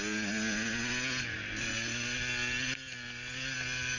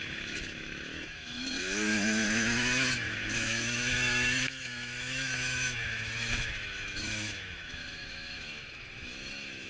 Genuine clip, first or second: first